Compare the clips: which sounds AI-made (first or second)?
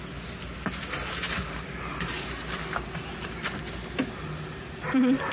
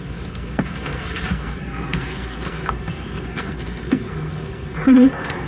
second